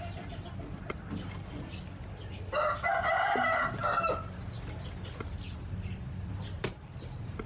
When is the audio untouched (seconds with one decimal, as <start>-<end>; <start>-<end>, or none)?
0.0-7.5